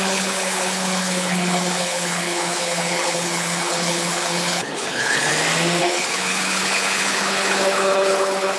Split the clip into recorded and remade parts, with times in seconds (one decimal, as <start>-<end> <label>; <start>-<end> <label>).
0.0-5.3 remade; 5.3-5.8 recorded; 5.8-8.6 remade